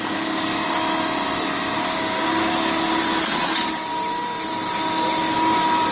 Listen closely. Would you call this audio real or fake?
real